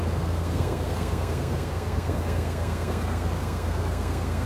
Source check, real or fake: fake